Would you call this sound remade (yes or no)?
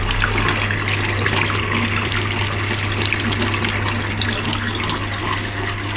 no